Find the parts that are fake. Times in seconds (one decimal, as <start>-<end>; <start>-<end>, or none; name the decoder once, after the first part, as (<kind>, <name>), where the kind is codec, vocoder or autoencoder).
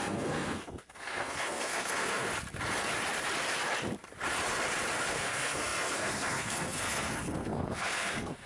0.0-2.3 (codec, SNAC); 5.1-8.5